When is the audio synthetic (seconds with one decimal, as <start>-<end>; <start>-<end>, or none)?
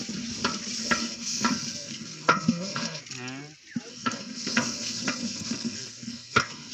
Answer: 0.8-3.0; 3.9-6.7